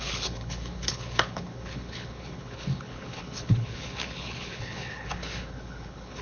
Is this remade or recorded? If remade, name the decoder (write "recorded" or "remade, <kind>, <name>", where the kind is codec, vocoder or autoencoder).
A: remade, codec, HILCodec